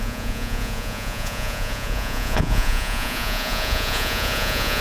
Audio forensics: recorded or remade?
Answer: remade